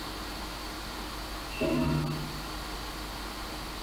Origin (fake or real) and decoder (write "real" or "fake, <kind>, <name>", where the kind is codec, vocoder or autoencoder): real